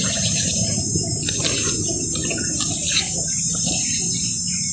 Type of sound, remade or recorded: recorded